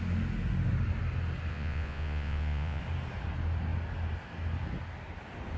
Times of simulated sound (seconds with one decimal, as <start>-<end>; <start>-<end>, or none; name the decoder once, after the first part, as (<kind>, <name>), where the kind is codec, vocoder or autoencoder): 1.5-2.8 (vocoder, Vocos)

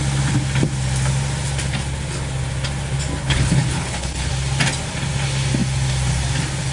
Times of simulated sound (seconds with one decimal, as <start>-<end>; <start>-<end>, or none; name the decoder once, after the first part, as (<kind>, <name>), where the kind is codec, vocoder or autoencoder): 3.2-4.3 (codec, HILCodec)

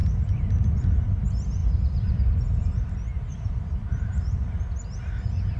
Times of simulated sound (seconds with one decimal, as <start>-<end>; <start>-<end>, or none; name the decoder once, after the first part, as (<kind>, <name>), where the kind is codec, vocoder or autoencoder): 0.0-1.2 (vocoder, BigVGAN v2); 1.6-2.8; 3.3-4.6

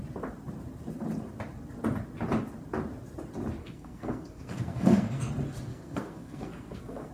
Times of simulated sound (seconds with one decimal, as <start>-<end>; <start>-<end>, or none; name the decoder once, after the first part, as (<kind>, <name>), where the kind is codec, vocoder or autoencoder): 3.6-5.3 (codec, SNAC); 5.7-7.1

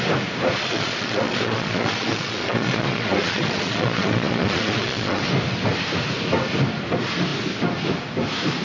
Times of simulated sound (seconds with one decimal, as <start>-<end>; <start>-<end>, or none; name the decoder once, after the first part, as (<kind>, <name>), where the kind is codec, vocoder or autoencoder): 0.6-5.3 (vocoder, Vocos)

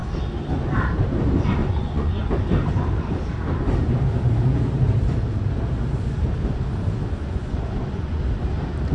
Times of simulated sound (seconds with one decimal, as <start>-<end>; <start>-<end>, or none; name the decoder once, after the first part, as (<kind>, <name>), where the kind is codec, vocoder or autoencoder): 1.6-2.3 (vocoder, Vocos); 7.2-8.2

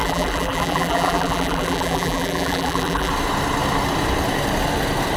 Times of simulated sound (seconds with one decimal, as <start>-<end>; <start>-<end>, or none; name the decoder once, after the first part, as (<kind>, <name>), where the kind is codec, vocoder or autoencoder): 0.0-3.1 (vocoder, BigVGAN v2)

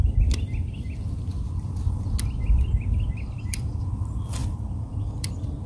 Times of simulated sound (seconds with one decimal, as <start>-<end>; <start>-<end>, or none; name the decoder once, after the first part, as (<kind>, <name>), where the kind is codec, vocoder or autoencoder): 3.4-5.7 (vocoder, BigVGAN v2)